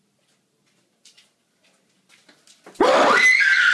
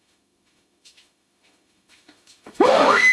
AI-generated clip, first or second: second